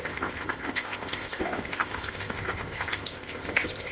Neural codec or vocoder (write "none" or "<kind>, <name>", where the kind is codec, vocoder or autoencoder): codec, ZipCodec